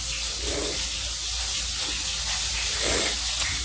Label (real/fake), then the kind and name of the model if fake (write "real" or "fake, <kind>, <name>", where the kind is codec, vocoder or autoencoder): real